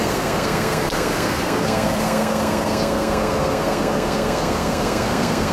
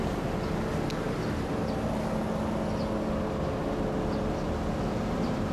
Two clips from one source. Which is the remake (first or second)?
first